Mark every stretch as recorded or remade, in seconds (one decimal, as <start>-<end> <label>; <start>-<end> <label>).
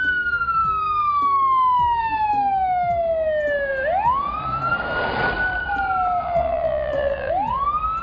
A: 0.0-6.2 recorded; 6.2-7.3 remade; 7.3-8.0 recorded